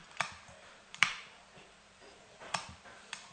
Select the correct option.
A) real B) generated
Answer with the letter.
B